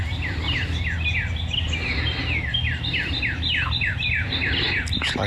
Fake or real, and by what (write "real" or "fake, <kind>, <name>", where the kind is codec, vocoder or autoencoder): real